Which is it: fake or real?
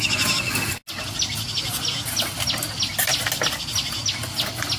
real